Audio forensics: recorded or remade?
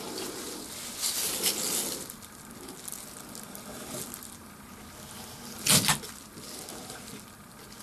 recorded